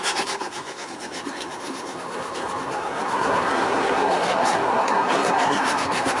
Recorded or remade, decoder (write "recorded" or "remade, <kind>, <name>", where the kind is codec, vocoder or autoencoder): remade, codec, SNAC